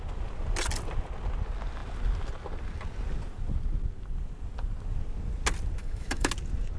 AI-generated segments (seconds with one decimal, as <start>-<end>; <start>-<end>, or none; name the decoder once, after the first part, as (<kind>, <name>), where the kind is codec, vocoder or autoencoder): 5.8-6.3 (autoencoder, DAC-VAE)